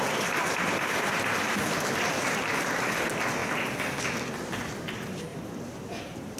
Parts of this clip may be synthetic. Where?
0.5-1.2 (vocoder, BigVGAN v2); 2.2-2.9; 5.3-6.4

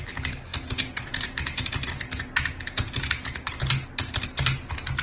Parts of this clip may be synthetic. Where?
0.5-3.5 (vocoder, Vocos)

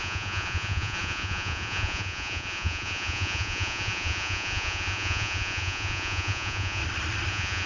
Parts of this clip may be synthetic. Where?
0.0-6.8 (vocoder, Vocos); 7.3-7.7

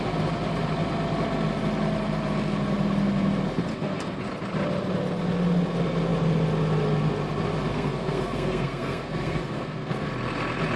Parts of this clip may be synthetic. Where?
3.7-4.2 (codec, SNAC); 7.7-10.1

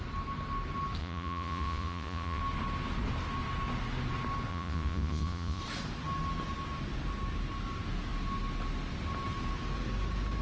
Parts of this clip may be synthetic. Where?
1.0-2.4 (vocoder, Vocos); 4.5-5.6

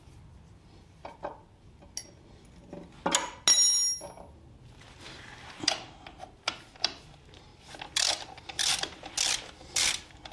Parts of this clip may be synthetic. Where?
none